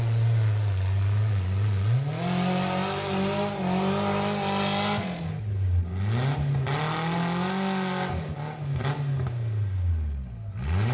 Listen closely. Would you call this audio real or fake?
real